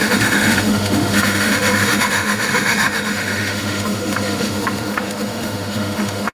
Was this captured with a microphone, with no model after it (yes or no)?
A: no